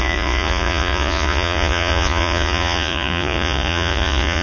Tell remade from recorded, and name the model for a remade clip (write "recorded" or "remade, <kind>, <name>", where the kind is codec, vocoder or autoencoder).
remade, vocoder, Vocos